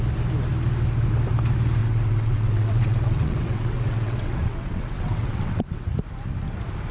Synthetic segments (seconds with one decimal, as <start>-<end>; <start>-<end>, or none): 1.8-5.9